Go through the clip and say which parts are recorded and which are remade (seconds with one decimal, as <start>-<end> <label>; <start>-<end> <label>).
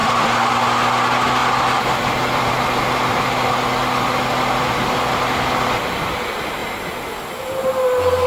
0.0-8.3 recorded